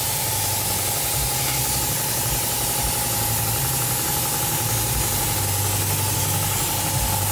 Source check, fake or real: real